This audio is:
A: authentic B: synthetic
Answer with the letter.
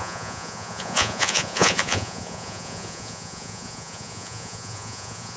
B